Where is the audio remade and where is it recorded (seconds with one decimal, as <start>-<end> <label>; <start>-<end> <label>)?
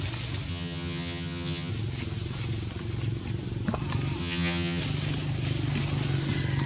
0.0-0.5 recorded; 0.5-1.7 remade; 1.7-4.2 recorded; 4.2-4.8 remade; 4.8-6.7 recorded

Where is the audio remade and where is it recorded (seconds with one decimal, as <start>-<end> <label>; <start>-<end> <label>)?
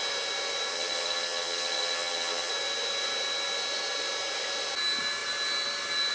0.0-0.7 recorded; 0.7-2.5 remade; 2.5-6.1 recorded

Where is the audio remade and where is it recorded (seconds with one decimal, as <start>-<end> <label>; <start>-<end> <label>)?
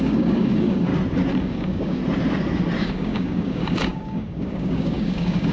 0.0-0.9 remade; 0.9-1.4 recorded; 1.4-2.0 remade; 2.0-2.8 recorded; 2.8-5.5 remade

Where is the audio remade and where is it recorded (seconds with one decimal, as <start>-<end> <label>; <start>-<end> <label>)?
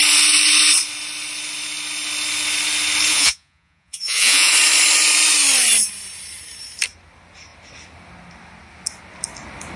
0.0-3.1 recorded; 3.1-4.5 remade; 4.5-9.8 recorded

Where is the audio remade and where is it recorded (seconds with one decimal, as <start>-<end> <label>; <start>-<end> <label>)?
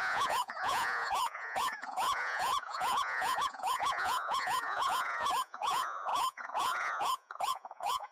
0.0-8.1 remade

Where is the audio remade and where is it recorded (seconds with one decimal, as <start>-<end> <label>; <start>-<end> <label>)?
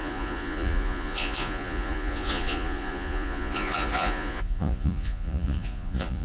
0.0-6.2 remade